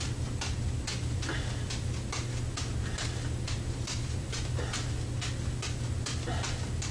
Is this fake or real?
real